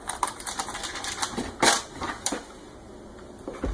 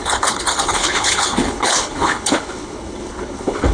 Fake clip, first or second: second